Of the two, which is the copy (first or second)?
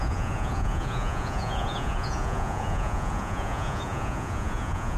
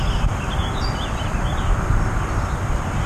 first